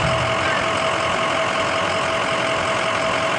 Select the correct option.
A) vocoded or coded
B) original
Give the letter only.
B